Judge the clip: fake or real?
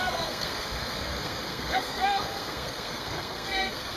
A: fake